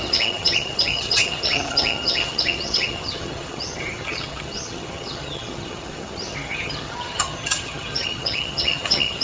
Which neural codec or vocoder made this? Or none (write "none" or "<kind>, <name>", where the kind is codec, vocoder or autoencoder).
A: vocoder, HiFi-GAN